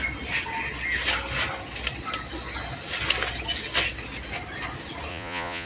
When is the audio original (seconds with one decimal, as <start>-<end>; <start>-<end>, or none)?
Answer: 0.0-5.1